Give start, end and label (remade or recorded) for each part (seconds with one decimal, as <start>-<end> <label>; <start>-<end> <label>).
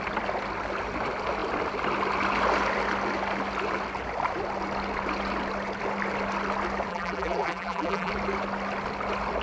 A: 0.0-6.9 recorded; 6.9-8.1 remade; 8.1-9.4 recorded